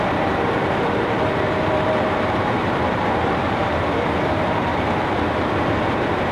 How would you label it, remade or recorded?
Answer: remade